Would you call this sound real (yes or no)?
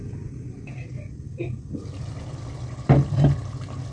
yes